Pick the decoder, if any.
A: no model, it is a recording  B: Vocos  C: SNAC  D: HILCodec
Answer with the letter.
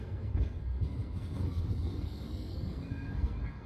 C